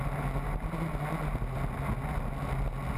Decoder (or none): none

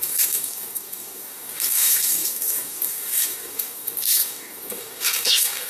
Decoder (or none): codec, DAC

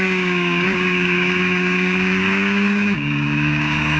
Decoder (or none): codec, DAC